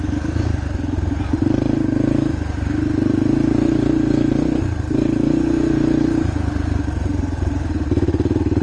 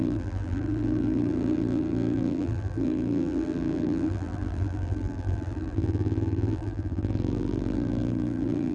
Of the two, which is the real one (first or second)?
first